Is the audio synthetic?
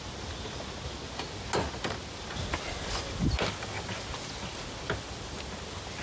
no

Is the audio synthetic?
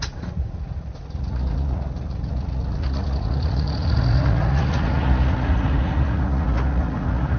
yes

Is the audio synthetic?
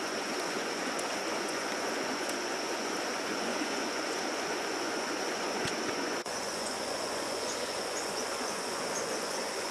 yes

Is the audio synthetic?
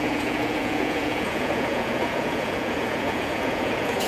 yes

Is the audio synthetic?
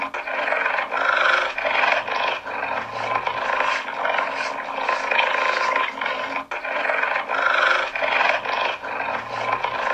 no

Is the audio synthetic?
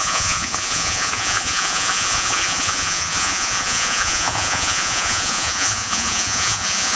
yes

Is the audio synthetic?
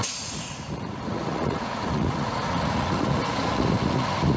yes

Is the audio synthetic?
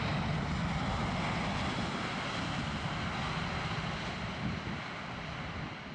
no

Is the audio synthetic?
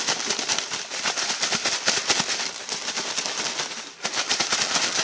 no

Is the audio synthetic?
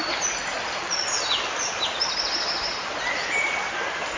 no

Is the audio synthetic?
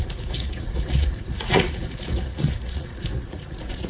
yes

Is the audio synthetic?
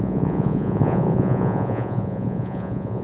yes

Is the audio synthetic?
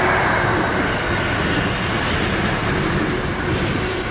no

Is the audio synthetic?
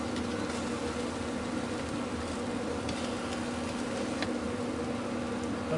no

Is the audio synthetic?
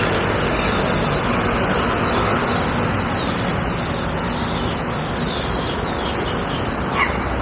no